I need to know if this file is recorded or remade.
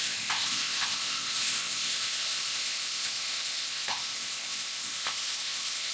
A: remade